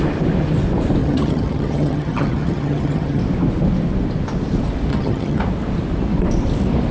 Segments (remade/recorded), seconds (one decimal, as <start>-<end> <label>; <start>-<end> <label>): 0.0-1.0 recorded; 1.0-3.2 remade; 3.2-4.9 recorded; 4.9-5.4 remade; 5.4-6.9 recorded